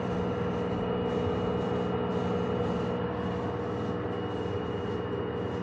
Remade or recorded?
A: recorded